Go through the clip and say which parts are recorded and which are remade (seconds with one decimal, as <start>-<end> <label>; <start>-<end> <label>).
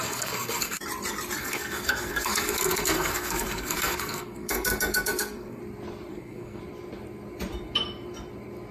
0.0-0.8 remade; 0.8-1.4 recorded; 1.4-5.6 remade; 5.6-6.1 recorded; 6.1-6.6 remade; 6.6-8.7 recorded